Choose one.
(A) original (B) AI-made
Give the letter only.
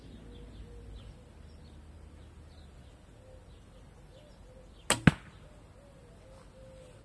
A